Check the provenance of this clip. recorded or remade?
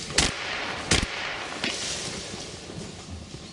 recorded